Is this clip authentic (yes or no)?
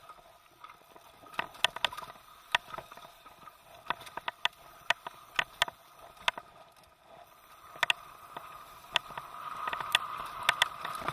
yes